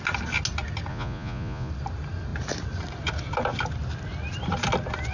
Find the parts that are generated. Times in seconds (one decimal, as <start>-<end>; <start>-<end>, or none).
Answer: 0.9-1.7